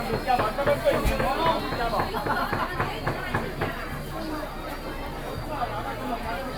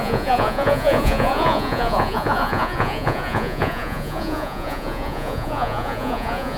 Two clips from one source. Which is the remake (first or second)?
second